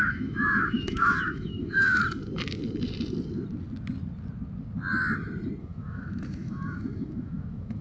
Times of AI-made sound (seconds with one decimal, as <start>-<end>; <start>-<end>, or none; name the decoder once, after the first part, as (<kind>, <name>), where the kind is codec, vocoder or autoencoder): 0.0-2.0 (autoencoder, DAC-VAE); 5.6-7.8